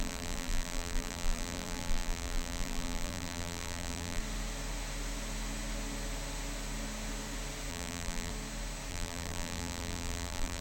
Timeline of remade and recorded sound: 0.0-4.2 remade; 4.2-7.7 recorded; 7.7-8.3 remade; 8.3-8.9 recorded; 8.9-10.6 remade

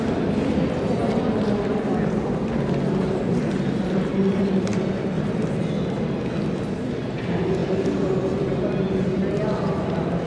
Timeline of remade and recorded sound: 0.0-3.3 recorded; 3.3-3.8 remade; 3.8-4.7 recorded; 4.7-6.3 remade; 6.3-7.6 recorded; 7.6-9.0 remade; 9.0-10.3 recorded

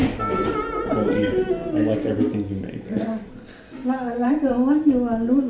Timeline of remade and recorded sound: 0.0-3.3 remade; 3.3-3.8 recorded; 3.8-4.5 remade; 4.5-5.5 recorded

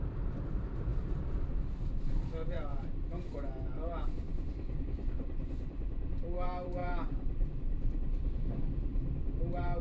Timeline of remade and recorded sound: 0.0-8.9 remade; 8.9-9.4 recorded; 9.4-9.8 remade

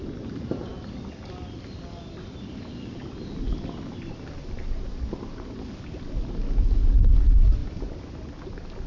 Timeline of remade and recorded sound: 0.0-7.6 recorded; 7.6-8.4 remade; 8.4-8.9 recorded

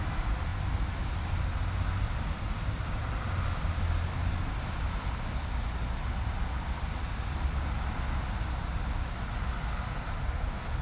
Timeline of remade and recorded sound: 0.0-10.8 recorded

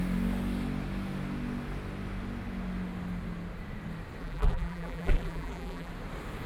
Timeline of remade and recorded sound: 0.0-4.2 recorded; 4.2-5.9 remade; 5.9-6.5 recorded